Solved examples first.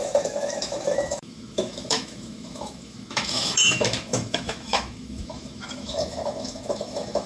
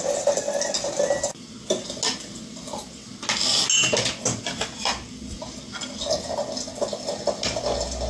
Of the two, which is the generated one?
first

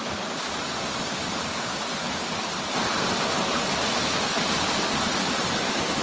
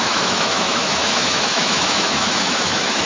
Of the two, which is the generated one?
second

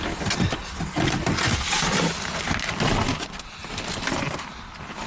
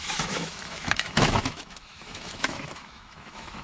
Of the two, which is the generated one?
second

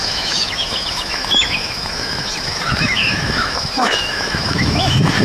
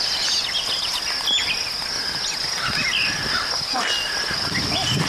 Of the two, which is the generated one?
first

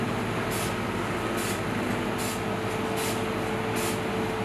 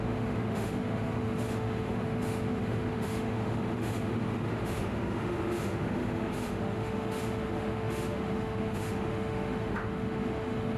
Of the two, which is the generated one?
second